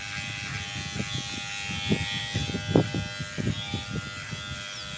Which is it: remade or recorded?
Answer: recorded